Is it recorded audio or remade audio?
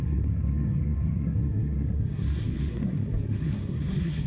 remade